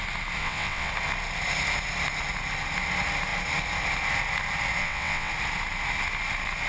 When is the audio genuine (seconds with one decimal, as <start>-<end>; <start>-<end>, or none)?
0.0-0.4; 0.9-4.8; 5.3-6.7